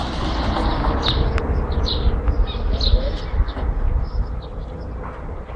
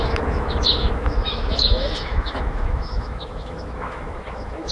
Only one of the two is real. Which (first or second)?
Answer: first